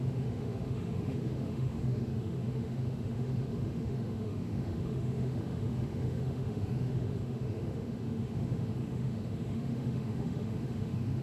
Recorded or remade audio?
remade